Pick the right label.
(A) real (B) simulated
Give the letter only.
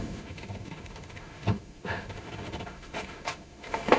B